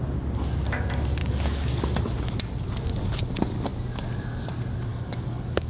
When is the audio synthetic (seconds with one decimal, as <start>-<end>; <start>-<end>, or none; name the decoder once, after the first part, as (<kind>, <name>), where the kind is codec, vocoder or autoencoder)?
1.2-1.8 (codec, DAC); 4.9-5.7